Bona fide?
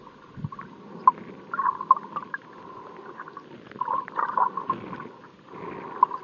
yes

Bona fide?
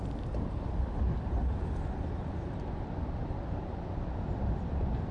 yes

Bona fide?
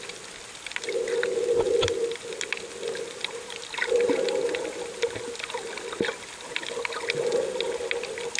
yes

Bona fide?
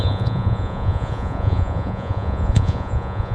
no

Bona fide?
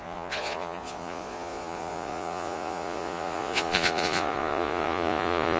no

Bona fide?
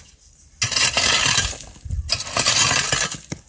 yes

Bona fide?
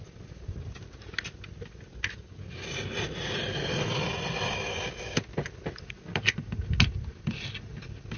yes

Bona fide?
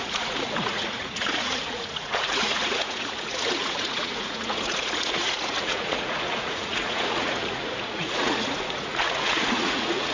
no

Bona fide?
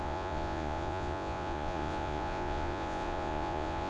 no